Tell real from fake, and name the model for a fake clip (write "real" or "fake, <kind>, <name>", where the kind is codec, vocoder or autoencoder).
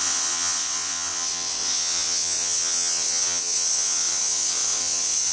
fake, vocoder, WaveNeXt